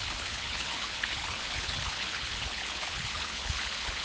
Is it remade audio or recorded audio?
remade